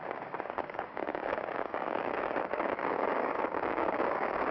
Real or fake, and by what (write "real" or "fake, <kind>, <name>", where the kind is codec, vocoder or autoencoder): fake, codec, DAC